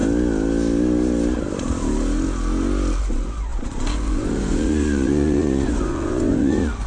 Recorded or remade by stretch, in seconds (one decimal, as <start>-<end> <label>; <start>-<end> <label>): 0.0-3.0 recorded; 3.0-6.9 remade